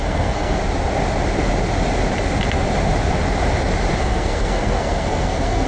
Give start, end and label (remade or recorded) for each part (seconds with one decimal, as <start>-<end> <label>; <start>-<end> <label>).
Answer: 0.0-0.6 remade; 0.6-4.0 recorded; 4.0-5.7 remade